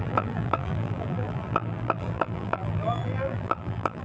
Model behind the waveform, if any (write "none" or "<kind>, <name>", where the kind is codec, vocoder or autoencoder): vocoder, BigVGAN v2